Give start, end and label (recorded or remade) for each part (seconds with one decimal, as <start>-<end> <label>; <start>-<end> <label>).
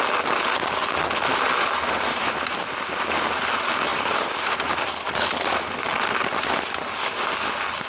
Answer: 0.0-1.3 recorded; 1.3-2.6 remade; 2.6-3.9 recorded; 3.9-4.6 remade; 4.6-7.9 recorded